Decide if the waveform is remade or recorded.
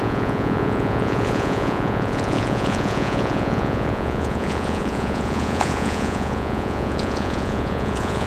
remade